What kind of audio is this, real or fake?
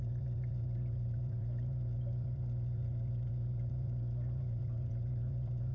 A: fake